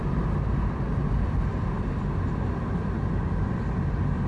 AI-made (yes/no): no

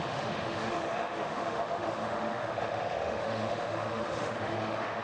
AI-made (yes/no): yes